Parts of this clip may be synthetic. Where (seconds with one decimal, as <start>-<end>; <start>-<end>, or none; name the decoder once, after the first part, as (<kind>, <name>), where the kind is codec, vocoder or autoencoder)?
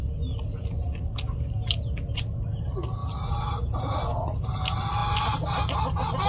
none